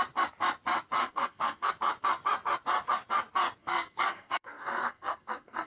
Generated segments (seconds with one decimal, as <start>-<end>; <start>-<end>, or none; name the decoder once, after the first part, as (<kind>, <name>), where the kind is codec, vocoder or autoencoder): 1.0-1.7 (codec, SNAC); 3.6-5.7